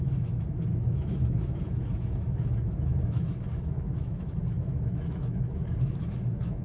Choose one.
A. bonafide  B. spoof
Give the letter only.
B